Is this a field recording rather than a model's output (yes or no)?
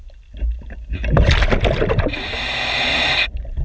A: yes